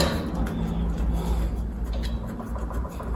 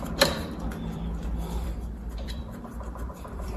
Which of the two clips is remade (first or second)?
second